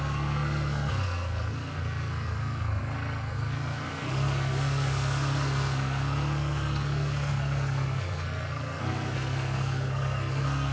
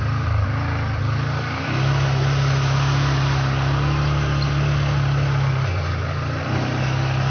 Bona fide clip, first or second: second